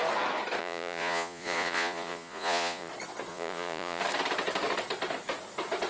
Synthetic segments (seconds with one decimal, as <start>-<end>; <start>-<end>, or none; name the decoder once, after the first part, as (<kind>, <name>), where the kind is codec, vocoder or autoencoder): 0.6-2.9 (vocoder, Vocos); 3.3-4.0

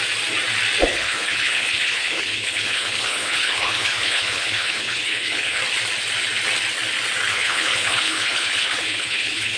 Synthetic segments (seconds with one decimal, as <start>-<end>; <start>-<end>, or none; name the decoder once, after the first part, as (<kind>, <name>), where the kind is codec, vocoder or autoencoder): 0.9-5.6 (codec, HILCodec); 7.3-9.6

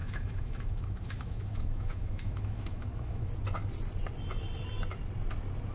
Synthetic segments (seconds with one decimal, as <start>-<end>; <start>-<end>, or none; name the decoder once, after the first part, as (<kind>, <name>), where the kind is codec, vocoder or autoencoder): 0.0-3.3 (autoencoder, DAC-VAE)